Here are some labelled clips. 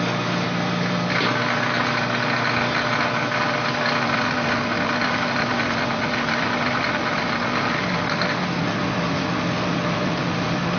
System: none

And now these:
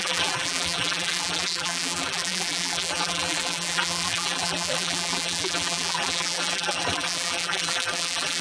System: vocoder, BigVGAN v2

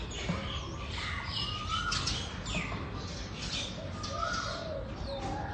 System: none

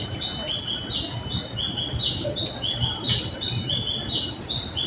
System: none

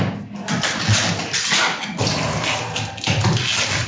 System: none